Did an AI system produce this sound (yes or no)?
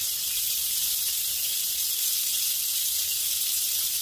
yes